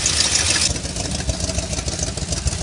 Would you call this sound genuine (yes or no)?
yes